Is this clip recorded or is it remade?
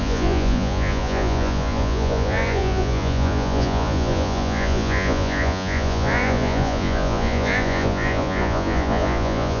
remade